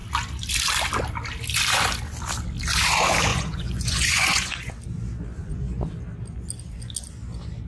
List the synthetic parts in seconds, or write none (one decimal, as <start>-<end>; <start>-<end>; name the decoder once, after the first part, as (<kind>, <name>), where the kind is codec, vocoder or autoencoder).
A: 3.3-4.7 (vocoder, Vocos); 5.4-5.9

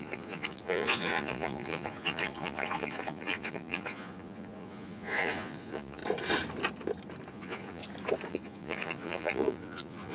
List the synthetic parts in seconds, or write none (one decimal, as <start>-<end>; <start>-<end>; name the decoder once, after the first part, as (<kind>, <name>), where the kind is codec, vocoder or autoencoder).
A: 0.0-6.0 (vocoder, Vocos); 7.3-7.8; 8.3-10.1

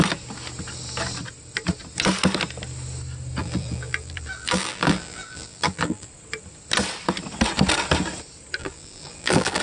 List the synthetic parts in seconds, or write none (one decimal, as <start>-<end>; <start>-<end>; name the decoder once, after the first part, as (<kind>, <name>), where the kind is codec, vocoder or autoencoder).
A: 3.4-6.1 (vocoder, BigVGAN v2); 8.6-9.6